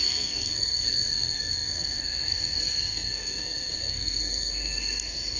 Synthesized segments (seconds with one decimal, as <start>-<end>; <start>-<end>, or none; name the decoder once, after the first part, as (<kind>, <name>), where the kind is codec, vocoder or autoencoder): 0.0-5.4 (codec, SNAC)